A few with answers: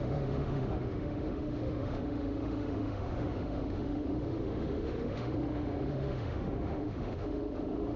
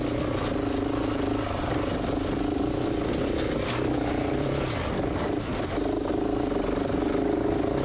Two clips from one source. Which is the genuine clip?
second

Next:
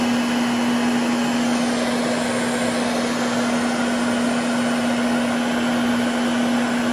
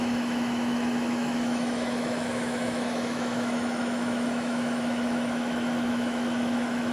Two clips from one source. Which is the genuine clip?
first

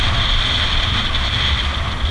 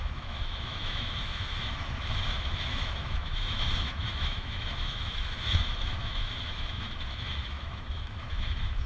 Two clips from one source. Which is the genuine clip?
first